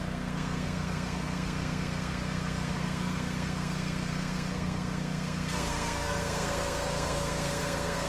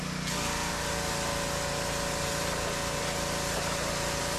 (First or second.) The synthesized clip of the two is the first